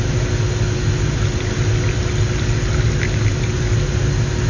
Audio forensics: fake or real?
real